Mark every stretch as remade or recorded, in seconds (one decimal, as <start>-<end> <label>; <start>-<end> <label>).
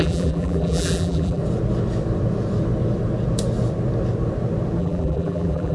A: 0.0-1.4 remade; 1.4-4.8 recorded; 4.8-5.7 remade